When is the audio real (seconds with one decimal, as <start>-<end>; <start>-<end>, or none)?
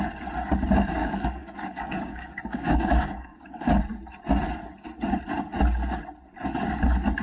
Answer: 0.0-1.0; 3.7-7.2